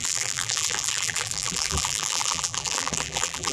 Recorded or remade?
remade